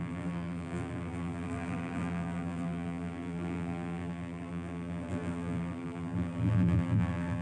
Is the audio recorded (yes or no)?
no